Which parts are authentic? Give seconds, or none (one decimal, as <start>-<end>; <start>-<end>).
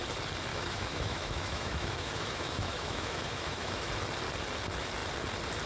0.0-0.5; 3.9-5.7